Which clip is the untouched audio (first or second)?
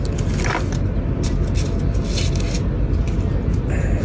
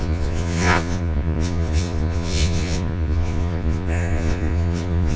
first